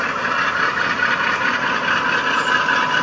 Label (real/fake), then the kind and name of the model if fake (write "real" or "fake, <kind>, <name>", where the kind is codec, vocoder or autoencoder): real